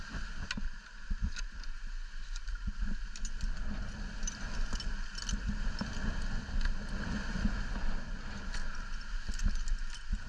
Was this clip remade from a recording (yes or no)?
no